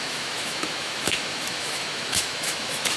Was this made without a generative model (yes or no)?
no